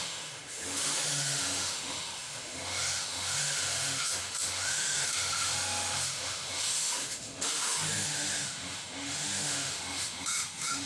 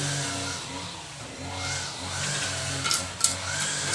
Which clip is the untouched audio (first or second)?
second